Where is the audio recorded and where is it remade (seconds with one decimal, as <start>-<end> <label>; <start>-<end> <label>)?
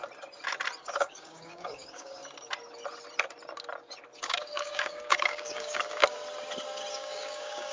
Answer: 0.0-0.8 recorded; 0.8-2.2 remade; 2.2-4.2 recorded; 4.2-6.0 remade; 6.0-6.9 recorded; 6.9-7.7 remade